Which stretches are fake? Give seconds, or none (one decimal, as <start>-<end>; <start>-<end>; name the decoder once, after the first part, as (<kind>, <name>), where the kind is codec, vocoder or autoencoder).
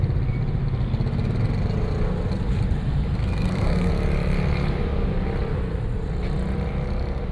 3.2-3.9 (codec, SNAC)